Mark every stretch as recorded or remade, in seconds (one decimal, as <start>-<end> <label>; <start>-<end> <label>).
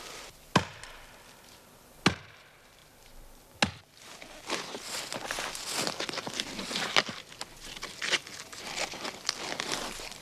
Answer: 0.0-10.2 recorded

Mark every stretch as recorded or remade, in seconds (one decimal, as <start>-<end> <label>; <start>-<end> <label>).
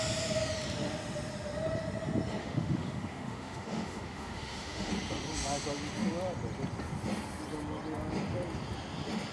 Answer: 0.0-2.4 recorded; 2.4-4.9 remade; 4.9-9.3 recorded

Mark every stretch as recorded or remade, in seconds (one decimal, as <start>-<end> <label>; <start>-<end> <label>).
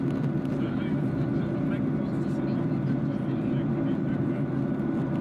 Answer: 0.0-5.2 recorded